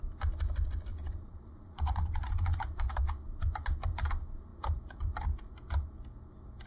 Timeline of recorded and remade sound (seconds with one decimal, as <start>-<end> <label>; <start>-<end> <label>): 0.0-0.9 recorded; 0.9-2.9 remade; 2.9-6.7 recorded